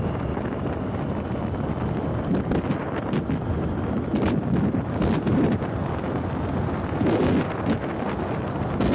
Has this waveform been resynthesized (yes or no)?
no